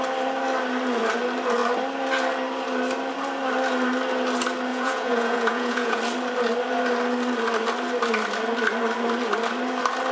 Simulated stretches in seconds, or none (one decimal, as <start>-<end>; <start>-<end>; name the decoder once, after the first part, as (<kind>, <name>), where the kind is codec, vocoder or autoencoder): 4.7-6.0 (vocoder, Vocos)